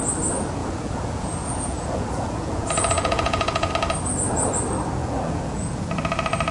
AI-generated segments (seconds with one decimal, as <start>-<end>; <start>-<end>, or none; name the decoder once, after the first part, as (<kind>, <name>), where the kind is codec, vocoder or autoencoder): 0.6-3.7 (vocoder, Vocos); 5.0-5.8